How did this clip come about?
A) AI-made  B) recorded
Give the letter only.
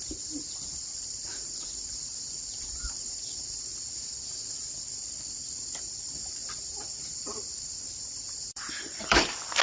A